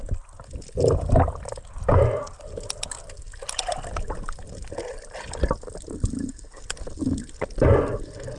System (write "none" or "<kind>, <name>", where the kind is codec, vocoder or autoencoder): none